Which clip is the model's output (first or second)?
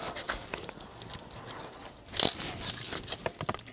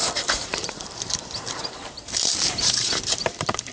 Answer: second